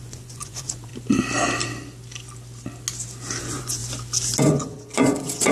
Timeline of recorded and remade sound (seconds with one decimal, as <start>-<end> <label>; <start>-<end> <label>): 0.0-0.9 remade; 0.9-3.4 recorded; 3.4-3.8 remade; 3.8-4.4 recorded; 4.4-5.5 remade